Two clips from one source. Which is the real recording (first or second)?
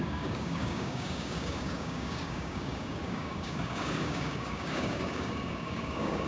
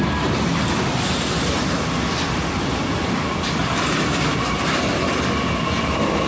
second